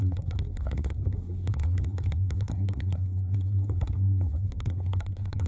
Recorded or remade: remade